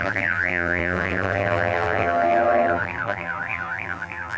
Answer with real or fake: fake